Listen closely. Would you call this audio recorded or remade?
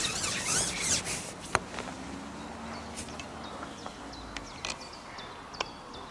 recorded